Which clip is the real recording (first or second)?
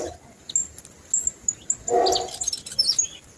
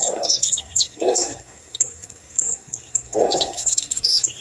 first